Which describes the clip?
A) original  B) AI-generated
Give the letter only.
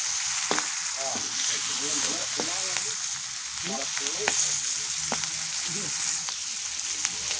A